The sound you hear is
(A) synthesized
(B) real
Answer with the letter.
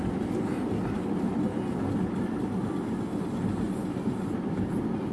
B